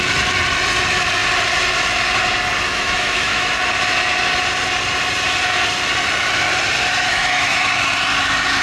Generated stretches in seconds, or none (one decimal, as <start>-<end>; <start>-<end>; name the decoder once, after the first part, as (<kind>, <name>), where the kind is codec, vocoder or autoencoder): 2.7-3.5 (autoencoder, DAC-VAE); 7.1-7.7